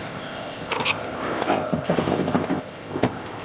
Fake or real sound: fake